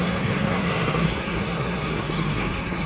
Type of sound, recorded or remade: remade